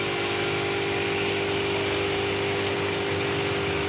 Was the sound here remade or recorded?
recorded